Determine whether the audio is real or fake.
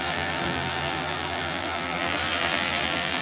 fake